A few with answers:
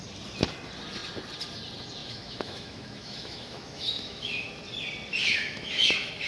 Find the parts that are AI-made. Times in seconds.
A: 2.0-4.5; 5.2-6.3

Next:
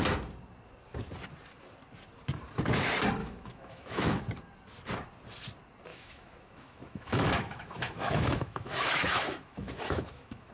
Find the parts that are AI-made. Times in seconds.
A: 3.2-4.2; 5.9-10.5

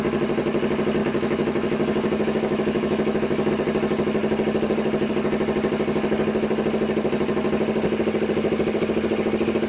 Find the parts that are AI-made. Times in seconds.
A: 1.0-3.5